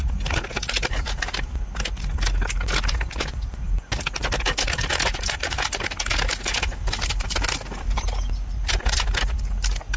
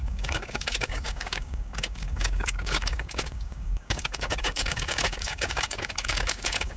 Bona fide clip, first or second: first